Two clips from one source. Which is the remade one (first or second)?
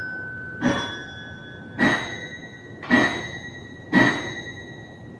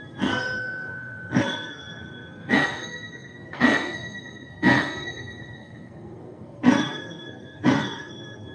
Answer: second